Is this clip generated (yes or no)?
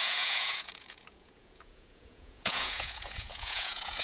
yes